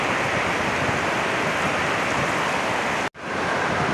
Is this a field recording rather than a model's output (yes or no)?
yes